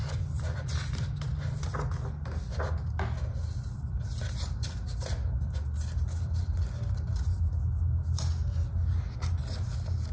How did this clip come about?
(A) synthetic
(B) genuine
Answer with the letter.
B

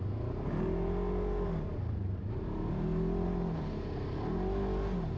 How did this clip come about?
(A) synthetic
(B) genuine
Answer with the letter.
B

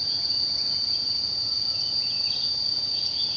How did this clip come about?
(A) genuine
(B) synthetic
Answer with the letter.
B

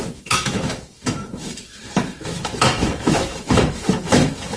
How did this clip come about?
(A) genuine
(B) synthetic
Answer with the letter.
B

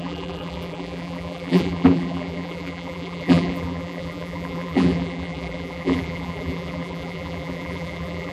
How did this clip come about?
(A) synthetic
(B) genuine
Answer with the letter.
A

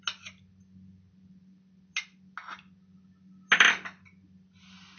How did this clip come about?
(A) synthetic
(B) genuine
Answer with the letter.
B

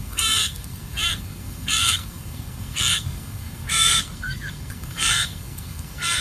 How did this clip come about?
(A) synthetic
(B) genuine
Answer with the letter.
A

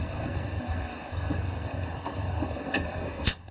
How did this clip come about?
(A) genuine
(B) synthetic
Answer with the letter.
B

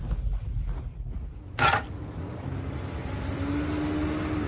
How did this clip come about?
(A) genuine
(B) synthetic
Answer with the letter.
A